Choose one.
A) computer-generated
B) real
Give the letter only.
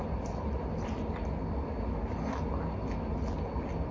B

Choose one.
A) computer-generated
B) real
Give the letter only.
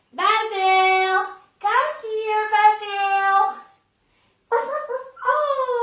B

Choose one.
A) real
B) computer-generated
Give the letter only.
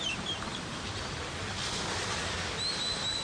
A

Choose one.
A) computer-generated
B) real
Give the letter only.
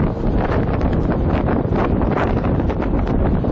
B